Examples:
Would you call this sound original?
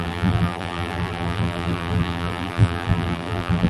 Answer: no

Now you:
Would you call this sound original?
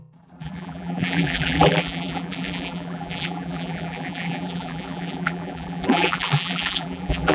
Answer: no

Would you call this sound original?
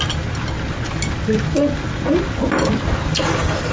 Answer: yes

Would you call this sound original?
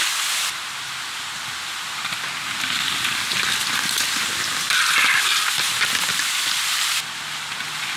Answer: yes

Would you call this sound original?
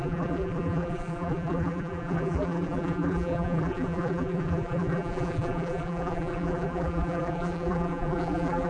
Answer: no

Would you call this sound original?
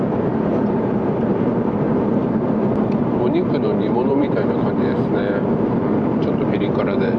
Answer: no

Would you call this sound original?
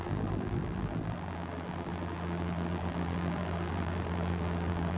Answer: no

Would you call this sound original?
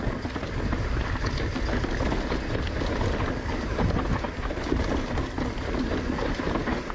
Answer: yes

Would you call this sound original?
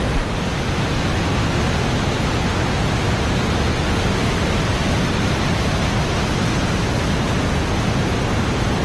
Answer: yes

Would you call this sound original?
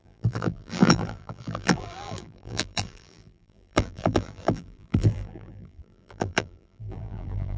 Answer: no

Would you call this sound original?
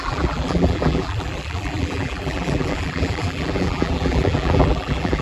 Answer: no